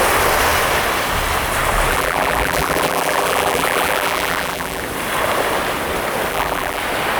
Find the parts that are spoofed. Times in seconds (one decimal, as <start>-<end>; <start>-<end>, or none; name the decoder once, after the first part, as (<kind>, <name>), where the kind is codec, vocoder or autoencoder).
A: 1.9-4.8 (vocoder, BigVGAN v2); 6.3-6.8